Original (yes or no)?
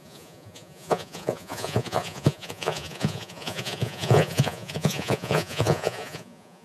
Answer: no